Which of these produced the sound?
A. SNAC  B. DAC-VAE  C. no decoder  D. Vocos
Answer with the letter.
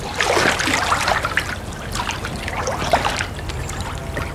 C